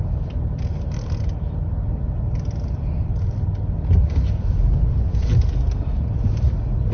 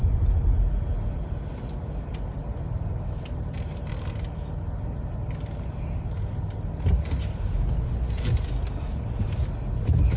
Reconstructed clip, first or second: first